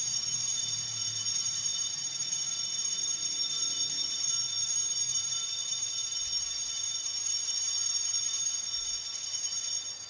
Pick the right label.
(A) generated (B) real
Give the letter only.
B